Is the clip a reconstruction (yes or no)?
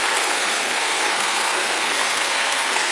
yes